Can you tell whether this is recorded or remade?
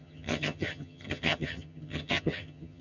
remade